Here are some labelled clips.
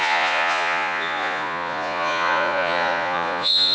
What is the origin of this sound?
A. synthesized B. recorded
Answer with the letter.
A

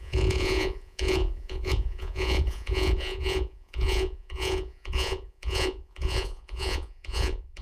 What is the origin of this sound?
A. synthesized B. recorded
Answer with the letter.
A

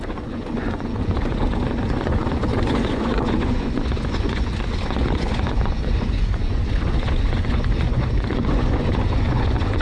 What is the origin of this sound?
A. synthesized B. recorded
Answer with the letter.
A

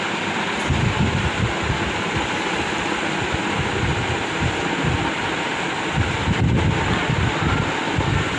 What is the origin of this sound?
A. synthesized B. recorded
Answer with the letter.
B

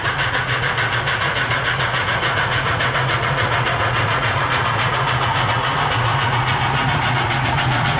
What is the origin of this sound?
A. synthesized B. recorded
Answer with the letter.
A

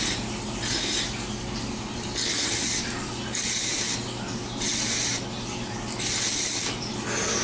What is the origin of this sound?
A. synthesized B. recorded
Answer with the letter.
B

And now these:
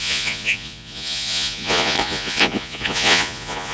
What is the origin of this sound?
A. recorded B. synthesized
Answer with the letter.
B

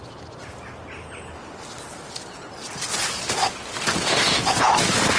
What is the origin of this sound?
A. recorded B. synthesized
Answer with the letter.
A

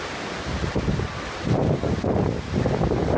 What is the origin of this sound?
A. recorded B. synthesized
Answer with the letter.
A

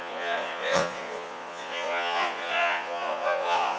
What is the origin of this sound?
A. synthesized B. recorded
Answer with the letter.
A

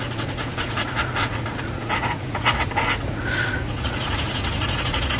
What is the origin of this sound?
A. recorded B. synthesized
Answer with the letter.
B